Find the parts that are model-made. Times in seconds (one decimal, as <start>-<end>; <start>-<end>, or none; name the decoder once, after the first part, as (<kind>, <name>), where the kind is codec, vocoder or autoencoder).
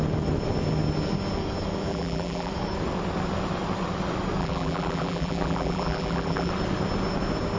1.9-2.5 (vocoder, BigVGAN v2); 4.4-6.5